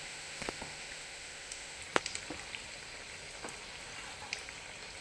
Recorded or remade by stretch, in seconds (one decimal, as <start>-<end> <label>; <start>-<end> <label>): 0.0-1.8 remade; 1.8-5.0 recorded